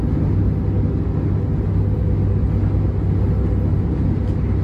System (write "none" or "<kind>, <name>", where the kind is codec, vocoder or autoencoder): none